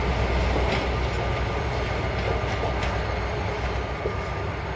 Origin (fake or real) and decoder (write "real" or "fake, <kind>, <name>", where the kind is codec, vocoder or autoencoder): real